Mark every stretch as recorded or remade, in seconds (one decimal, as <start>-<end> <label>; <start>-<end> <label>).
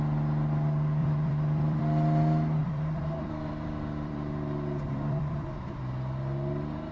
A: 0.0-1.0 recorded; 1.0-1.8 remade; 1.8-2.6 recorded; 2.6-5.8 remade; 5.8-6.9 recorded